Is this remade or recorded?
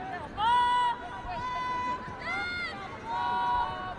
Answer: recorded